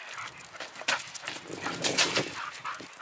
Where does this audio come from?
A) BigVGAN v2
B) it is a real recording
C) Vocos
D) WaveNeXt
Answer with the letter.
B